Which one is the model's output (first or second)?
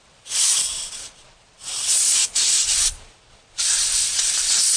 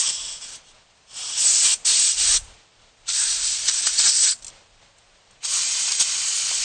first